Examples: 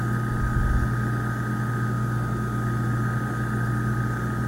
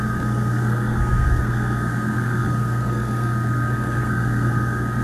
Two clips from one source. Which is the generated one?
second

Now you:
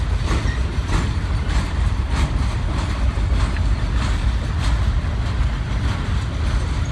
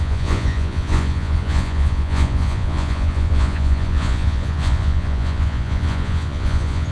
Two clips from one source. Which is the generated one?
second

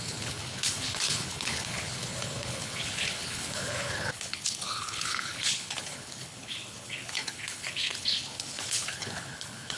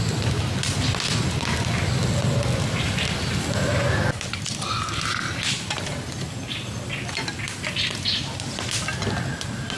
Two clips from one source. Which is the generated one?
first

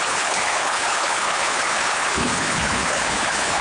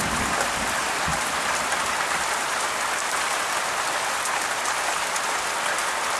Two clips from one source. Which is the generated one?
first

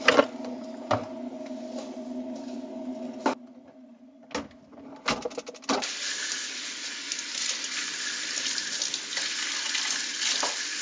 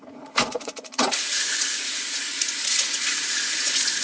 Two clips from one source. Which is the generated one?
second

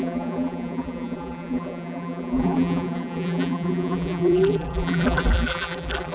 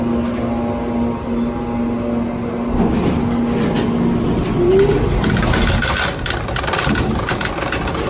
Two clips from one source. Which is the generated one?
first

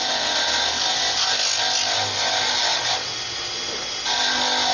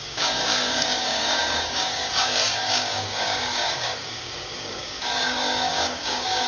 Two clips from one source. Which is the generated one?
second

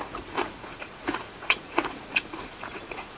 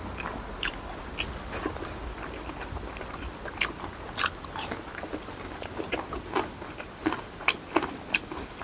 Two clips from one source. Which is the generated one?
first